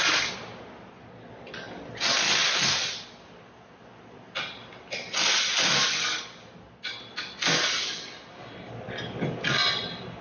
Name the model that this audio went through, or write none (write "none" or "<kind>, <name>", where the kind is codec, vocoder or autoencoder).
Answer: none